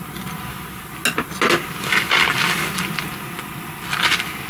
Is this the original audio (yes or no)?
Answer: yes